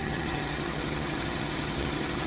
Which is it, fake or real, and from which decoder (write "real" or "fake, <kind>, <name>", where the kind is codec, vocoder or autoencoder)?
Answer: fake, vocoder, HiFi-GAN